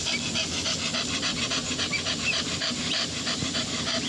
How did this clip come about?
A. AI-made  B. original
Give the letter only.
B